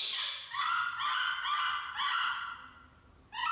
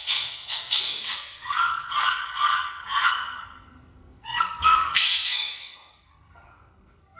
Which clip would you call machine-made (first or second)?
second